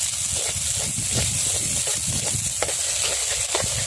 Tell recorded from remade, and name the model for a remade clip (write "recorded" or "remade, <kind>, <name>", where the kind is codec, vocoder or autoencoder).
recorded